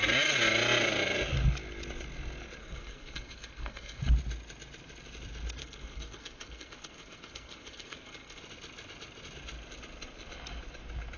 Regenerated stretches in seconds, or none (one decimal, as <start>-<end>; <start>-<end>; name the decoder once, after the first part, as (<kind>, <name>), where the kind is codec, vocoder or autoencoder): 2.6-4.0 (codec, SNAC); 5.6-8.4